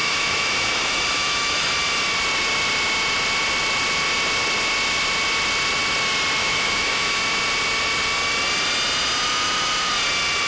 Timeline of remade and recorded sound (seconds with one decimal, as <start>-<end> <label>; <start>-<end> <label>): 0.0-1.7 remade; 1.7-6.4 recorded; 6.4-7.2 remade; 7.2-10.5 recorded